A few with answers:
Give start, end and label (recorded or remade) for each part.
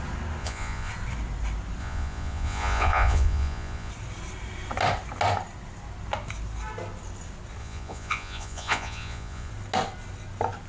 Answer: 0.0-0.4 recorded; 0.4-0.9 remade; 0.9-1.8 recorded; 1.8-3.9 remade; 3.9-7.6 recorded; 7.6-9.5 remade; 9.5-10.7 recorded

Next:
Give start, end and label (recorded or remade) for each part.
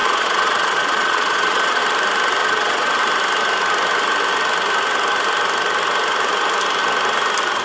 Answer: 0.0-1.8 remade; 1.8-2.4 recorded; 2.4-2.9 remade; 2.9-7.6 recorded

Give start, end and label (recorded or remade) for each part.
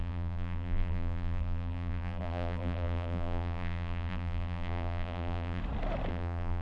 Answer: 0.0-5.6 remade; 5.6-6.1 recorded; 6.1-6.6 remade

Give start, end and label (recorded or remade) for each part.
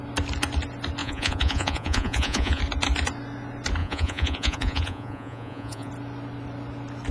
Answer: 0.0-1.0 recorded; 1.0-2.6 remade; 2.6-3.8 recorded; 3.8-5.9 remade; 5.9-7.1 recorded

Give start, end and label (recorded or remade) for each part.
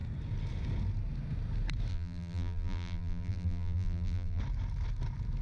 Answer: 0.0-1.9 recorded; 1.9-4.4 remade; 4.4-5.4 recorded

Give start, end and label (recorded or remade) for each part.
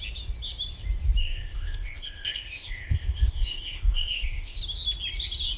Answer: 0.0-1.2 recorded; 1.2-4.6 remade; 4.6-5.6 recorded